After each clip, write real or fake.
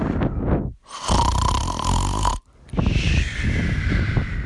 real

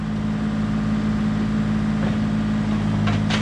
real